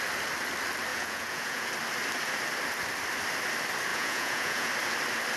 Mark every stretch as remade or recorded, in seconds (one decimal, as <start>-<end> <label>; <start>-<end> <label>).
0.0-0.9 recorded; 0.9-1.7 remade; 1.7-3.9 recorded; 3.9-4.7 remade; 4.7-5.4 recorded

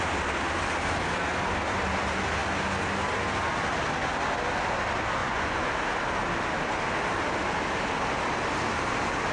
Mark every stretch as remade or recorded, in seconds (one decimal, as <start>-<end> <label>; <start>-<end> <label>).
0.0-5.2 recorded; 5.2-5.7 remade; 5.7-9.3 recorded

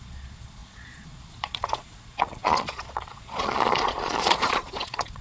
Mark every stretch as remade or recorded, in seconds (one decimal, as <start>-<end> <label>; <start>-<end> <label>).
0.0-5.2 remade